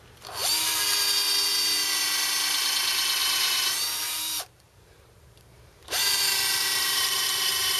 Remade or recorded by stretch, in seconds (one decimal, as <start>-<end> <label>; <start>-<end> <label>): 0.0-3.2 recorded; 3.2-7.8 remade